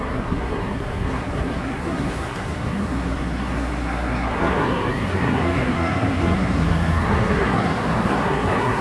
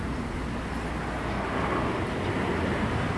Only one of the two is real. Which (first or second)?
second